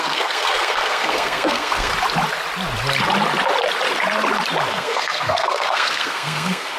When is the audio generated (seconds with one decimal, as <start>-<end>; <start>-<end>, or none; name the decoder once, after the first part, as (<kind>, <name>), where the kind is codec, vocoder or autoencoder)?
0.0-1.9 (codec, SNAC); 4.7-6.8

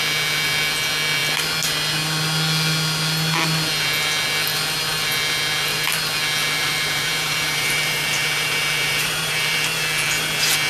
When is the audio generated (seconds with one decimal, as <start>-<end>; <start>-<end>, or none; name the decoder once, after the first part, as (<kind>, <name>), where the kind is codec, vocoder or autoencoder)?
6.4-9.6 (vocoder, BigVGAN v2)

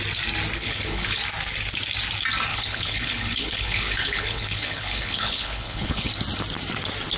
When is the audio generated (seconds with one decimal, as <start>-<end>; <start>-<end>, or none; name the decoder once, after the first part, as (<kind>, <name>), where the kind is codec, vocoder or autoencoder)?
0.6-1.2 (codec, HILCodec); 2.5-6.1